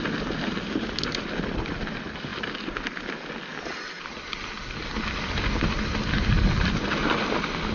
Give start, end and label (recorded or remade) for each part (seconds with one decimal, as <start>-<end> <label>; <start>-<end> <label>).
0.0-7.7 recorded